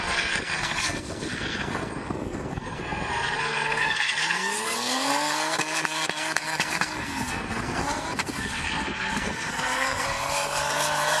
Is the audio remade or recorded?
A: remade